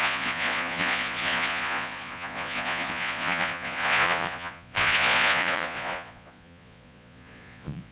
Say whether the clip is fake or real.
fake